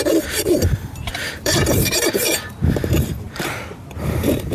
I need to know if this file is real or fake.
fake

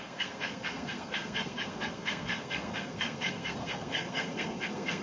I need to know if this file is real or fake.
fake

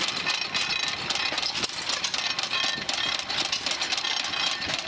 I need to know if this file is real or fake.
real